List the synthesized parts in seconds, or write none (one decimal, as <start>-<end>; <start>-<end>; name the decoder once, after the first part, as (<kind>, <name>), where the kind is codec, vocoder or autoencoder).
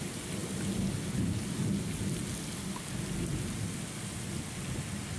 none